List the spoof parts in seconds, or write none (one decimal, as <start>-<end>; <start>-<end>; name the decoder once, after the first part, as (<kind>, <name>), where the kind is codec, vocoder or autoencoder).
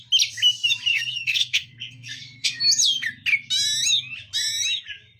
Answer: 0.9-2.6 (codec, SNAC)